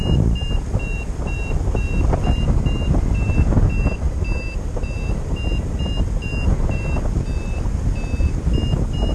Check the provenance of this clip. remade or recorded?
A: recorded